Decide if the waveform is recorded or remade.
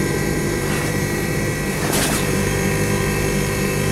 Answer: remade